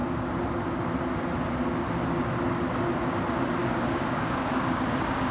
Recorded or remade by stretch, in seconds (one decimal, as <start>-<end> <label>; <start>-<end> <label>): 0.0-3.6 recorded; 3.6-5.3 remade